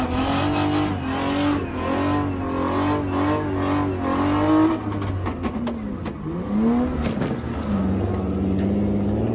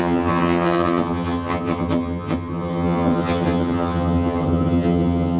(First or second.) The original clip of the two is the first